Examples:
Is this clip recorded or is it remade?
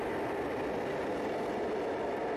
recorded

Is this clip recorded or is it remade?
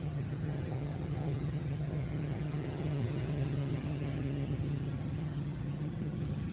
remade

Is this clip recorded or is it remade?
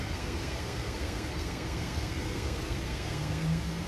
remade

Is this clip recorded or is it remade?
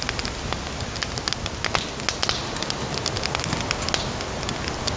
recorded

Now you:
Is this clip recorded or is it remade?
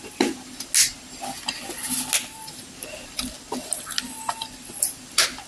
recorded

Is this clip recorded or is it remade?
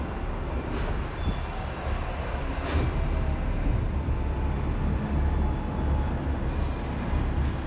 recorded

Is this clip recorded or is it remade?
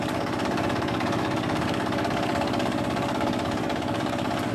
remade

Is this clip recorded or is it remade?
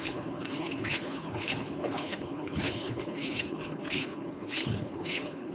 remade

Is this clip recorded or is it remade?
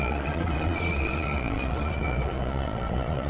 remade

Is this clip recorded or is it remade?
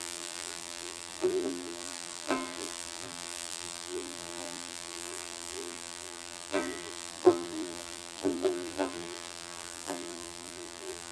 remade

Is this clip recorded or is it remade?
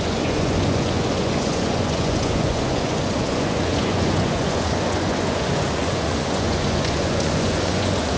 remade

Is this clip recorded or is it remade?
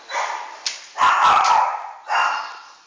recorded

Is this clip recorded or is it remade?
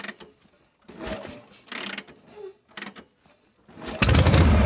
recorded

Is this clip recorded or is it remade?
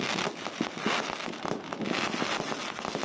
recorded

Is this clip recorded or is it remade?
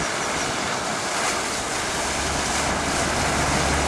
recorded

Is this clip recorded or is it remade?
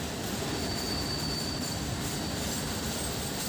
remade